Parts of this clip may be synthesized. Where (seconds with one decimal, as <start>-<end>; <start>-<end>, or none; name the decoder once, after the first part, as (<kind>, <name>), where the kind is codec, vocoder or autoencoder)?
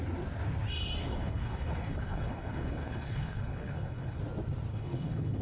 1.0-4.2 (codec, HILCodec); 4.7-5.4